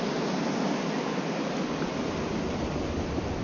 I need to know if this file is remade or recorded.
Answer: recorded